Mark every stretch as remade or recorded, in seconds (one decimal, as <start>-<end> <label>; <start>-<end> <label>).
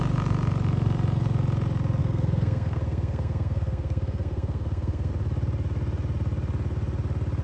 0.0-2.0 recorded; 2.0-5.1 remade; 5.1-7.4 recorded